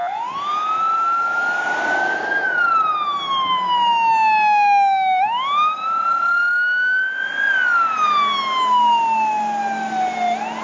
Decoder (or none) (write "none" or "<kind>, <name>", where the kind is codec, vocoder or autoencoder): none